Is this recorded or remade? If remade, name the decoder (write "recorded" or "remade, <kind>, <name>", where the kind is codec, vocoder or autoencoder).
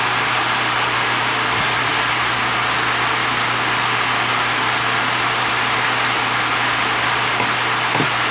recorded